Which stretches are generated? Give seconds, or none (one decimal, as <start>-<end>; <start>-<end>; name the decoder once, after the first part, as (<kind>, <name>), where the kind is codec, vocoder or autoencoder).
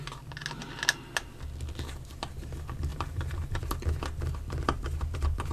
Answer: 2.9-3.6 (vocoder, BigVGAN v2)